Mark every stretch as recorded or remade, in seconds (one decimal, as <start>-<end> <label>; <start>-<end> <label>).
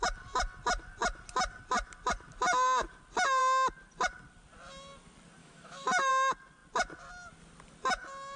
0.0-5.4 recorded; 5.4-6.1 remade; 6.1-8.4 recorded